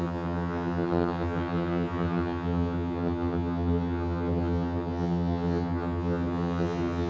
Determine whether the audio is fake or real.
fake